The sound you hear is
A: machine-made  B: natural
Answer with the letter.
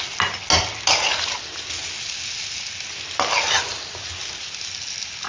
B